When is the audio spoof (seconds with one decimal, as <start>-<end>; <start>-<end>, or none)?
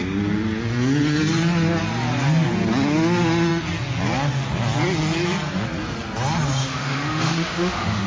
6.6-8.1